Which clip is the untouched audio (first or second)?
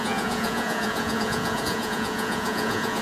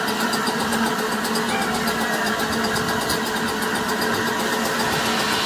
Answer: second